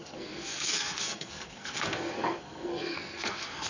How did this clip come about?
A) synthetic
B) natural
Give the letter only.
A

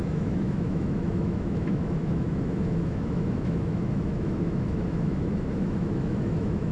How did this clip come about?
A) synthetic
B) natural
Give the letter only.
A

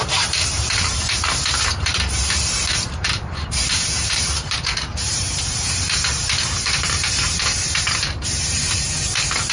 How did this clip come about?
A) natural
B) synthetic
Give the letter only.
B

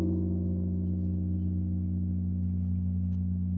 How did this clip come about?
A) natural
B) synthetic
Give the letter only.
A